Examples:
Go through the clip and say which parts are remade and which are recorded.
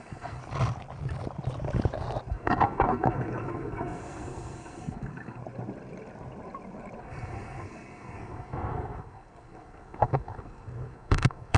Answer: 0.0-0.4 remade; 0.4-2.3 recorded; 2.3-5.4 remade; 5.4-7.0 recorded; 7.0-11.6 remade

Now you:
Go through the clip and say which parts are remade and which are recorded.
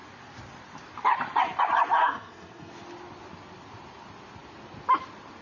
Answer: 0.0-2.0 recorded; 2.0-2.7 remade; 2.7-5.4 recorded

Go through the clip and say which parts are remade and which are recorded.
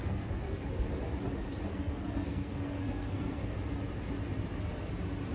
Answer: 0.0-0.9 remade; 0.9-1.7 recorded; 1.7-3.6 remade; 3.6-5.3 recorded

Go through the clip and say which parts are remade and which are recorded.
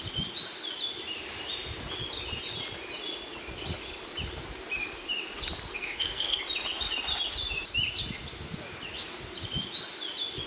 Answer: 0.0-5.7 recorded; 5.7-6.4 remade; 6.4-10.5 recorded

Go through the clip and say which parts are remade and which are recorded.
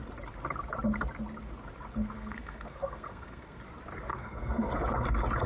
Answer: 0.0-2.0 recorded; 2.0-3.6 remade; 3.6-4.1 recorded; 4.1-4.7 remade; 4.7-5.5 recorded